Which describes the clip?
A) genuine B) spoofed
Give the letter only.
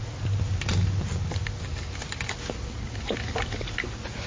A